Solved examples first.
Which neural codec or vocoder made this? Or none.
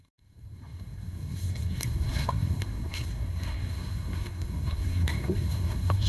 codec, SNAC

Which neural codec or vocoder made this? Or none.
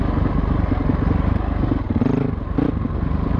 none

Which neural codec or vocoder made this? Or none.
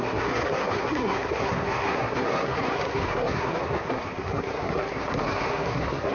codec, SNAC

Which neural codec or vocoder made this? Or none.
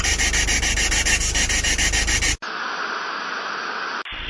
none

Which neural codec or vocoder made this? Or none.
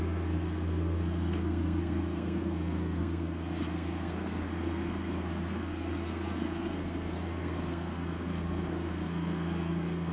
codec, SNAC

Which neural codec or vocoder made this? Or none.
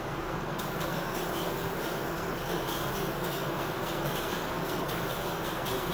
codec, SNAC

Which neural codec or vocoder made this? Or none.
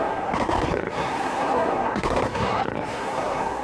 codec, SNAC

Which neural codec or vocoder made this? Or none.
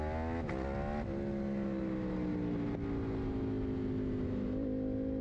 none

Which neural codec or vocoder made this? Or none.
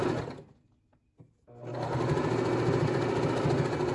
none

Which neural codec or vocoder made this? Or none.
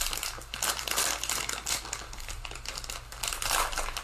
none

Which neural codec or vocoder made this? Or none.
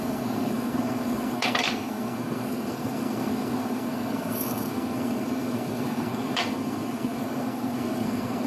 codec, SNAC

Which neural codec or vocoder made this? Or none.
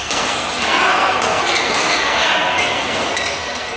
codec, SNAC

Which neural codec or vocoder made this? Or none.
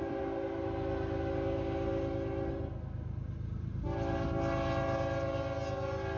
none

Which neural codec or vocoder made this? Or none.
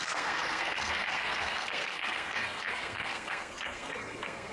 codec, SNAC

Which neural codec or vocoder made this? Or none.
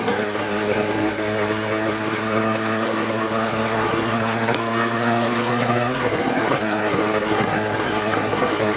codec, SNAC